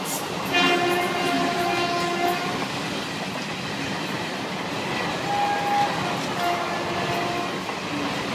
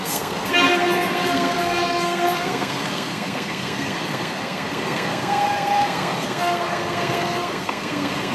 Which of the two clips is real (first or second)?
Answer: first